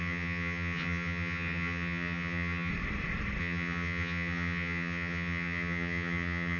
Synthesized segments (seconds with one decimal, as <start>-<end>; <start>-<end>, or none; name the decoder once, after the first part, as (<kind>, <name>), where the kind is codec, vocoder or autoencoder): 0.0-2.7 (vocoder, HiFi-GAN); 3.4-6.6